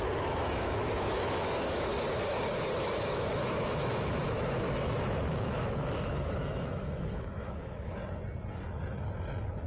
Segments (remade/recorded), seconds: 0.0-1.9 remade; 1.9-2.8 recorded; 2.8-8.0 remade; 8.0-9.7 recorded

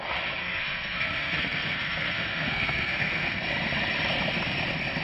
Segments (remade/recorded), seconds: 0.0-0.4 recorded; 0.4-3.4 remade; 3.4-5.0 recorded

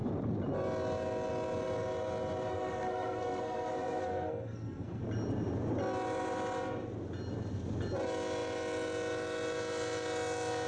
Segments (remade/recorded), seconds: 0.0-2.5 recorded; 2.5-5.0 remade; 5.0-10.7 recorded

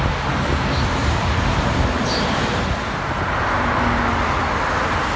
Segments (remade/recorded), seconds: 0.0-1.0 recorded; 1.0-3.8 remade; 3.8-5.2 recorded

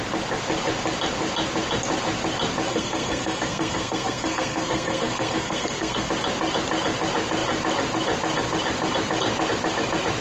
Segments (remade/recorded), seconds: 0.0-2.7 recorded; 2.7-6.1 remade; 6.1-10.2 recorded